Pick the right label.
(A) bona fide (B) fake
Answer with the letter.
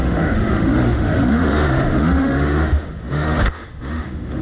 B